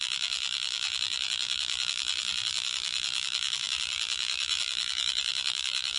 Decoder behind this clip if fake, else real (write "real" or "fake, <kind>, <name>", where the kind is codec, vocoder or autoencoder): fake, vocoder, BigVGAN v2